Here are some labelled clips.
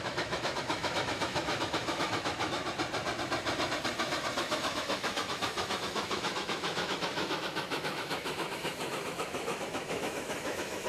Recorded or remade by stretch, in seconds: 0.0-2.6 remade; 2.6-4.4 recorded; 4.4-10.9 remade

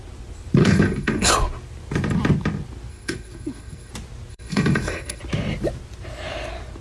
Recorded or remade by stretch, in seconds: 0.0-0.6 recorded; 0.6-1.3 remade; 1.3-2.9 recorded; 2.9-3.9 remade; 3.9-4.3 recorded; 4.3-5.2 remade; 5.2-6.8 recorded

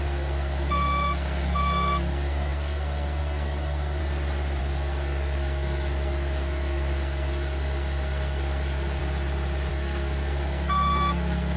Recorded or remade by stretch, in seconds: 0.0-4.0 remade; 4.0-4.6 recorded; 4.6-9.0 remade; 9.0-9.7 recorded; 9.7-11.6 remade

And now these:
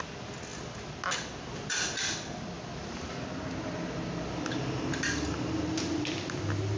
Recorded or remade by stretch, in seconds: 0.0-6.8 recorded

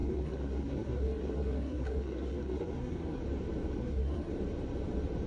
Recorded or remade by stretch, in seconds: 0.0-3.2 remade; 3.2-3.8 recorded; 3.8-4.3 remade; 4.3-5.3 recorded

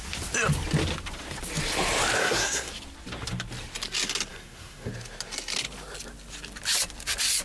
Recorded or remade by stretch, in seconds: 0.0-2.2 recorded; 2.2-2.7 remade; 2.7-4.3 recorded; 4.3-4.9 remade; 4.9-7.4 recorded

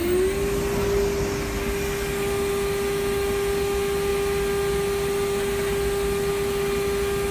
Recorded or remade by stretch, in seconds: 0.0-7.3 recorded

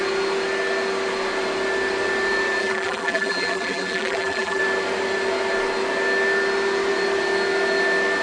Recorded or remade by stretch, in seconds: 0.0-2.6 recorded; 2.6-4.6 remade; 4.6-8.2 recorded